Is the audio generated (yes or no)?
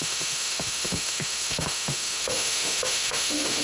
yes